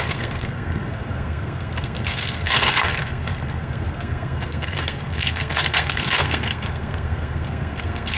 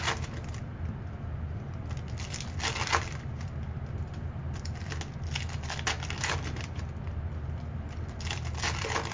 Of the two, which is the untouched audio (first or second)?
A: second